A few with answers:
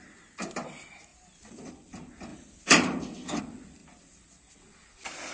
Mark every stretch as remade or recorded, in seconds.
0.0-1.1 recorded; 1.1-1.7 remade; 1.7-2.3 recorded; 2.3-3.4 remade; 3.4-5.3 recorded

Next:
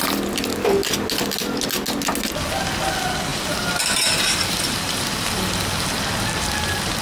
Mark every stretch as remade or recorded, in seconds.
0.0-3.3 recorded; 3.3-5.1 remade; 5.1-7.0 recorded

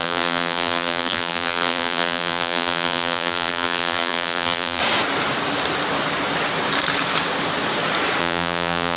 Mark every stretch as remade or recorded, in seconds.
0.0-4.8 remade; 4.8-8.2 recorded; 8.2-9.0 remade

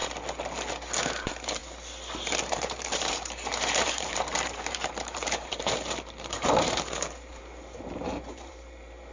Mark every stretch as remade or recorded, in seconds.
0.0-1.0 recorded; 1.0-1.6 remade; 1.6-2.5 recorded; 2.5-9.1 remade

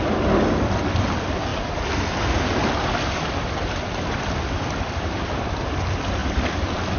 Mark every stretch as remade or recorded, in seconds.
0.0-1.5 recorded; 1.5-5.7 remade; 5.7-7.0 recorded

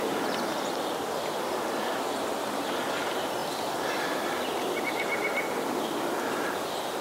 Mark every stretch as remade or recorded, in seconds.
0.0-7.0 recorded

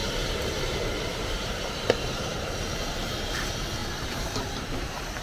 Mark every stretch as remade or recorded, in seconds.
0.0-3.1 remade; 3.1-3.8 recorded; 3.8-4.7 remade; 4.7-5.2 recorded